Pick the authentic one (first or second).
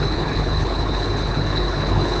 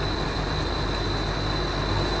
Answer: second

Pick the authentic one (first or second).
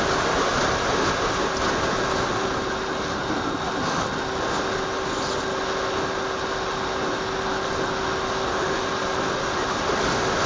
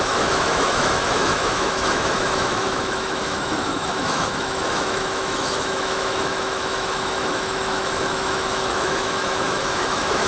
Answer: first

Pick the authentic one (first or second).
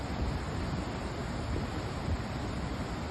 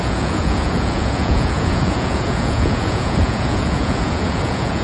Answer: first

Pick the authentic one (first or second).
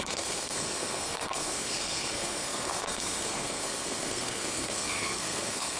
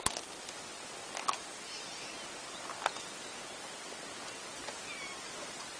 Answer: second